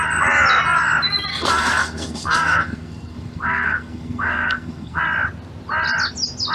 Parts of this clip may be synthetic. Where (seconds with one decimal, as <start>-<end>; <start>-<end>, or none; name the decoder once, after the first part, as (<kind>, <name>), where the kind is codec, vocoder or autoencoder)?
1.3-5.0 (codec, SNAC)

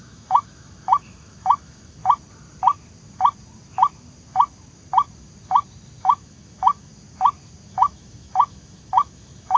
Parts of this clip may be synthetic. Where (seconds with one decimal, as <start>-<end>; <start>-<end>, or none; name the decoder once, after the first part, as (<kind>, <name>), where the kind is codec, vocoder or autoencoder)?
0.0-2.0 (autoencoder, DAC-VAE); 6.0-6.9; 7.7-9.6

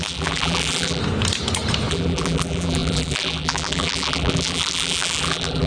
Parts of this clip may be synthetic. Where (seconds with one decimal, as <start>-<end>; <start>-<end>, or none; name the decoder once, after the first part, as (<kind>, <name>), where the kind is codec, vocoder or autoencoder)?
0.0-1.0 (vocoder, BigVGAN v2); 1.9-5.7

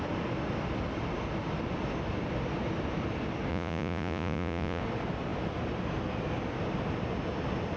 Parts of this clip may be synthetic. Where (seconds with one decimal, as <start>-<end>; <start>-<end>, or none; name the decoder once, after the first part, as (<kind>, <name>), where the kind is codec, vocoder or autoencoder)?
3.5-4.8 (vocoder, Vocos)